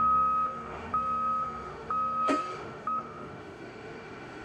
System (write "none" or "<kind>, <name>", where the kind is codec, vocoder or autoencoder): autoencoder, DAC-VAE